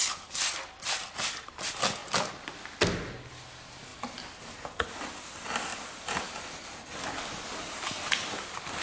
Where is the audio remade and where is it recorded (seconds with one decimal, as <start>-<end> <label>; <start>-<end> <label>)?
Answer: 0.0-8.8 recorded